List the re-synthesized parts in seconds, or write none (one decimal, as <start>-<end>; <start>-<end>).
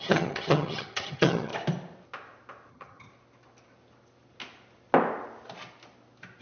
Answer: 0.0-1.5; 2.7-3.1